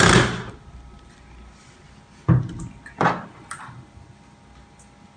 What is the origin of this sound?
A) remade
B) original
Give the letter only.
B